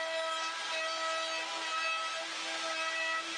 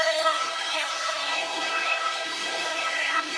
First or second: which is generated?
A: second